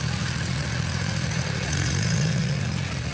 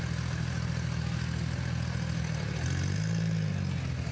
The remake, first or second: first